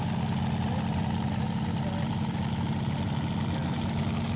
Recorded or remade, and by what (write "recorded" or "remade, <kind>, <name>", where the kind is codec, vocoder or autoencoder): recorded